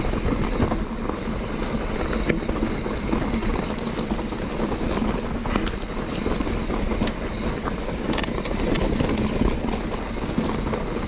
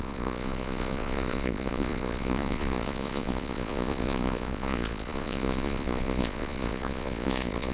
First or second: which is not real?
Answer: second